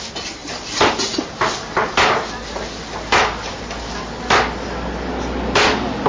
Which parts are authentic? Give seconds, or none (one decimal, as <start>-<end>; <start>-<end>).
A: 0.0-6.1